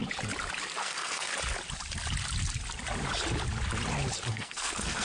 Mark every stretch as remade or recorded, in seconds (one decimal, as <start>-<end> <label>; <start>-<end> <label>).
0.0-0.8 recorded; 0.8-1.3 remade; 1.3-4.3 recorded; 4.3-5.0 remade